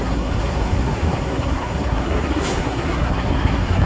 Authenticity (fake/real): fake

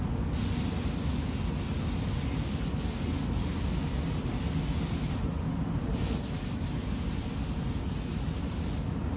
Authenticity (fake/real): real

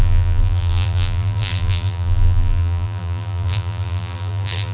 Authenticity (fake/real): fake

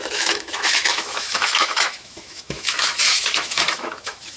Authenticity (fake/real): fake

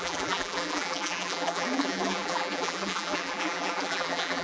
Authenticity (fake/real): fake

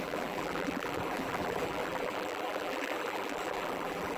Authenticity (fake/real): fake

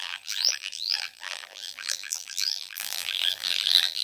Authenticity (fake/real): fake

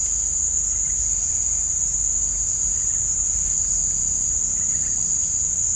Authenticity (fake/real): real